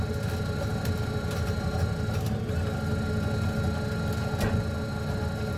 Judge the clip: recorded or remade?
recorded